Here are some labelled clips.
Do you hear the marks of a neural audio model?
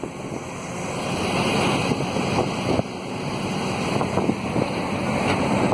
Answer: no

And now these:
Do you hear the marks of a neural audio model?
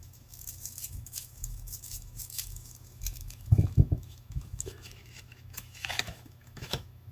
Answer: yes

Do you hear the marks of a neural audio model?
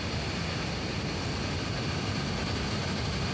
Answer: no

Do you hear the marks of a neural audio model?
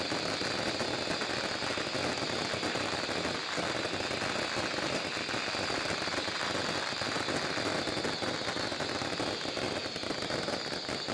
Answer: no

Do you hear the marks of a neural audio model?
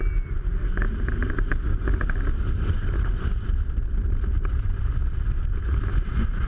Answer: no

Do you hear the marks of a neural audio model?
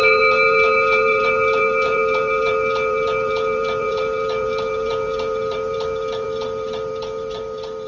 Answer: yes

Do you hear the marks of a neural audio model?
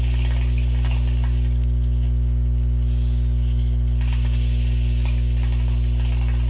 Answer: no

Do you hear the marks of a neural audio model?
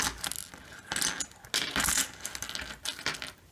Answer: no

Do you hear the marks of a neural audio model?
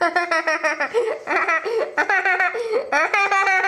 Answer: no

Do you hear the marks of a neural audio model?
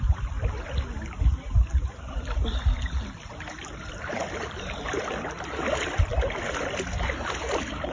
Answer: no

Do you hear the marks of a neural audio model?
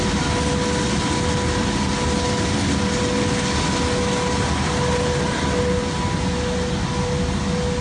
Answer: no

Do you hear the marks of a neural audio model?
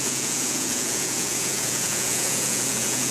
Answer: yes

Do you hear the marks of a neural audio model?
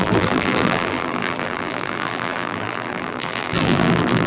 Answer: yes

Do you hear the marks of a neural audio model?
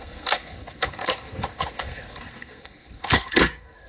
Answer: yes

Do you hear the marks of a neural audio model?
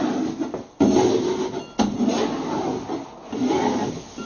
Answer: no